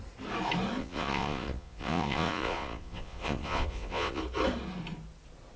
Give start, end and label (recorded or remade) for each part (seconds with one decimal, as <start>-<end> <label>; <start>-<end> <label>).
0.0-0.8 recorded; 0.8-4.2 remade; 4.2-5.6 recorded